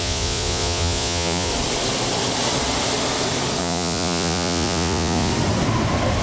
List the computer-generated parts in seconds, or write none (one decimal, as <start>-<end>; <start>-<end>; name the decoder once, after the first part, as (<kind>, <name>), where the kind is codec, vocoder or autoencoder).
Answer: 0.0-1.5 (vocoder, Vocos); 3.6-5.3